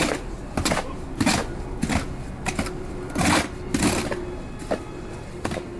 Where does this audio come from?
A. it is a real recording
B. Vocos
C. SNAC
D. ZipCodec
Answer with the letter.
A